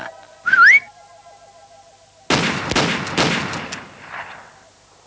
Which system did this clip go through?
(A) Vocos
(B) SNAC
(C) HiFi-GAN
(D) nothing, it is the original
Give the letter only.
D